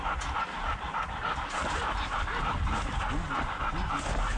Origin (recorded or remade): recorded